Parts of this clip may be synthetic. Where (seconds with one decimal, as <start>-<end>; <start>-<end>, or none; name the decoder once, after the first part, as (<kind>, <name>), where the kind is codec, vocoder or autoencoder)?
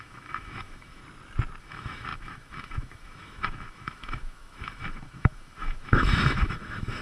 0.0-1.0 (autoencoder, DAC-VAE); 1.6-7.0